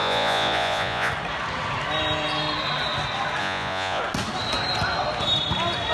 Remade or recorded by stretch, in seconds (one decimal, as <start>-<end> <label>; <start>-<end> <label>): 0.0-1.1 remade; 1.1-3.4 recorded; 3.4-4.0 remade; 4.0-5.9 recorded